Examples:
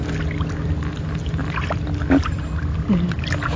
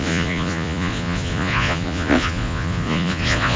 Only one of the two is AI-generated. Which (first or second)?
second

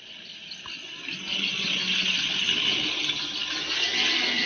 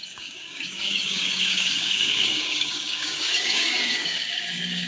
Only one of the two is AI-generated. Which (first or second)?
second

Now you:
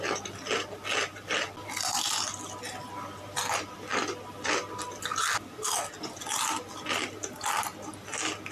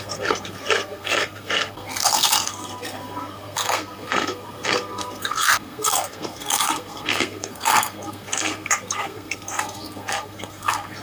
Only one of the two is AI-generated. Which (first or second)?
second